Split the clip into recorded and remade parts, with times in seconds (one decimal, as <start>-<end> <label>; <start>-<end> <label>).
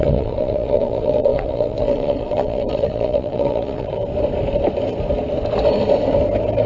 0.0-4.0 remade; 4.0-6.7 recorded